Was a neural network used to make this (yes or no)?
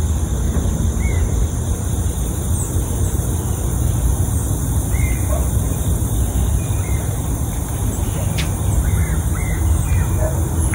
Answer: no